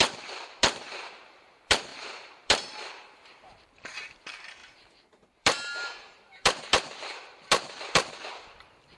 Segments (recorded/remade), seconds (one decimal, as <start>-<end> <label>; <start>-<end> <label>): 0.0-9.0 remade